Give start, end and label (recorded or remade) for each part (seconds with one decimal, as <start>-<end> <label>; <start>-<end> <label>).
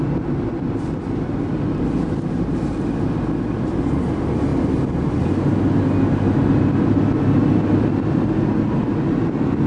0.0-9.7 recorded